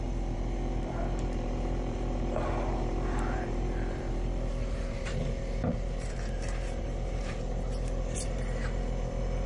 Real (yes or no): no